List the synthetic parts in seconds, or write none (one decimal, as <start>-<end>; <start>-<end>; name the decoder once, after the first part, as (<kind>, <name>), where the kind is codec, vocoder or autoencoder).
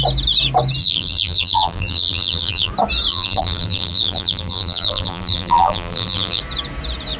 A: 0.8-2.7 (vocoder, BigVGAN v2); 3.1-6.4